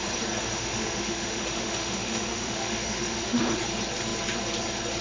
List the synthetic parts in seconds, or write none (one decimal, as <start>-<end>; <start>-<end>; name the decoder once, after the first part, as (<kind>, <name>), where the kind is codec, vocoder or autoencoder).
0.4-3.4 (autoencoder, DAC-VAE)